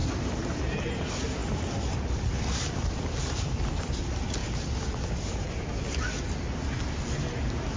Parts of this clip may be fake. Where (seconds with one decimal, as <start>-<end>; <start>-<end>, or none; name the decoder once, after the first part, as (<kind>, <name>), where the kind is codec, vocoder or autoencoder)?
1.4-4.0 (vocoder, BigVGAN v2); 4.4-5.8